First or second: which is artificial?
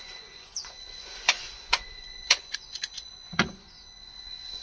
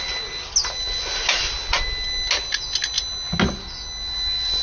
first